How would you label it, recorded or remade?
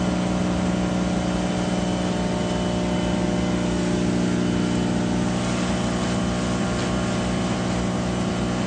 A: recorded